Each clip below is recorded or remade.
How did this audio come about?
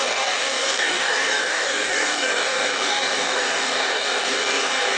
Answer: remade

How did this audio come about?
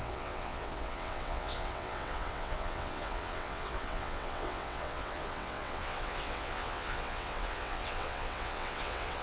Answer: remade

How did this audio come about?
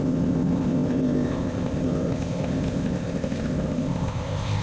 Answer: remade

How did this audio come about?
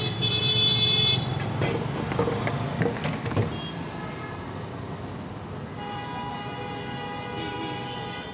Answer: recorded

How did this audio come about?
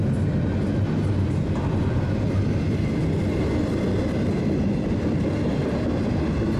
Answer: recorded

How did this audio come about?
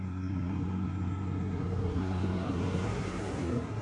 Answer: remade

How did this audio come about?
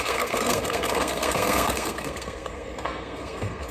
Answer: remade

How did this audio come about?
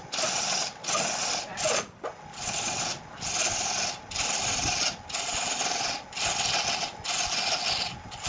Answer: recorded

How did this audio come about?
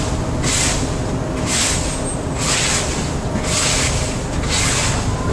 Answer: recorded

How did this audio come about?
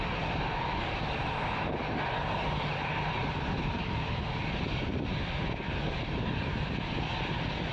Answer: recorded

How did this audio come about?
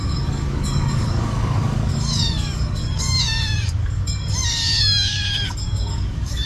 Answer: remade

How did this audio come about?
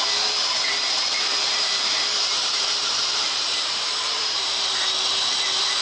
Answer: remade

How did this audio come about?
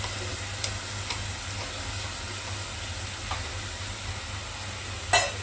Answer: recorded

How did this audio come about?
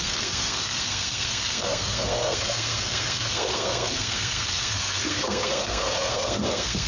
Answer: remade